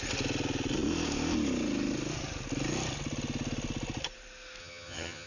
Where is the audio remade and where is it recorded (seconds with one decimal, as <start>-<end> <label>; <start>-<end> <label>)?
0.0-4.6 recorded; 4.6-5.3 remade